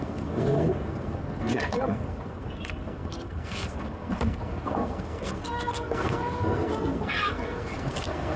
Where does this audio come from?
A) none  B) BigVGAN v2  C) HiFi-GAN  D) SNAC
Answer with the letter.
D